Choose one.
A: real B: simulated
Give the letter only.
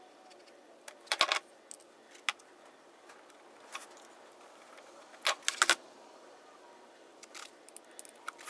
A